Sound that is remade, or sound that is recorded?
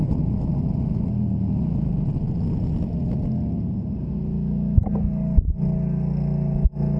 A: recorded